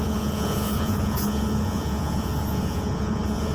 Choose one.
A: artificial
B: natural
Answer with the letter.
A